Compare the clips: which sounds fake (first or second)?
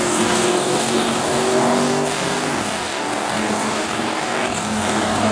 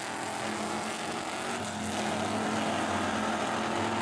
first